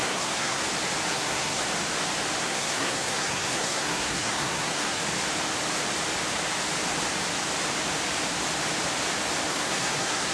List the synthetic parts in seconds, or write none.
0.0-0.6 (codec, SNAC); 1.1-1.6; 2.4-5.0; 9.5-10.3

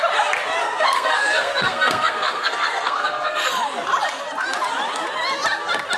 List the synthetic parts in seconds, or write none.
0.6-3.5 (codec, SNAC)

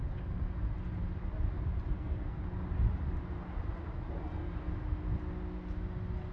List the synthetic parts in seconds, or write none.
1.9-2.4 (codec, SNAC)